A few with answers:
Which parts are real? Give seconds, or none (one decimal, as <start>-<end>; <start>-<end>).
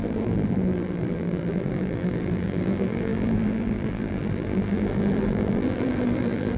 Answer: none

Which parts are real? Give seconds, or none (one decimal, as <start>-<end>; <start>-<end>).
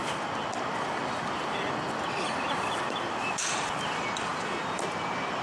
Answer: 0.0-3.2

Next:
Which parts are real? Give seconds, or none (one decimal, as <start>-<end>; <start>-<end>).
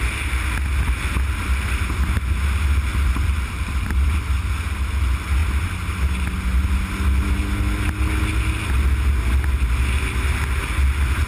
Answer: 0.0-2.9; 4.2-11.3